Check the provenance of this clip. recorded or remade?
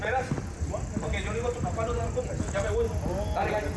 recorded